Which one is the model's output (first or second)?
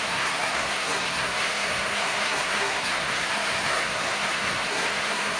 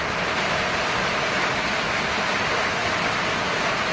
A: first